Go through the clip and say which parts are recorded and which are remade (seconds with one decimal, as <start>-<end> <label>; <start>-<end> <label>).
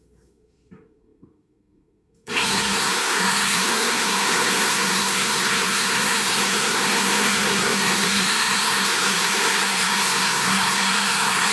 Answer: 0.0-11.5 remade